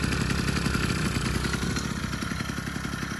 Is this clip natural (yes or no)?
yes